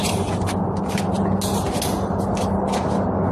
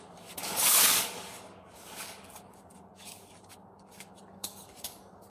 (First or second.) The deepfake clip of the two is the second